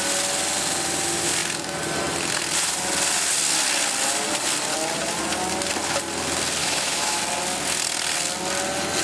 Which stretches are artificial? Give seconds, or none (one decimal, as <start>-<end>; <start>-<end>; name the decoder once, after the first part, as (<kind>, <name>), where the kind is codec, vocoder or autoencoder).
6.6-7.2 (autoencoder, DAC-VAE)